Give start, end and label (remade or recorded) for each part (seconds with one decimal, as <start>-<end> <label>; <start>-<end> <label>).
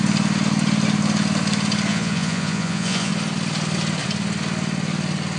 0.0-1.9 recorded; 1.9-3.1 remade; 3.1-5.4 recorded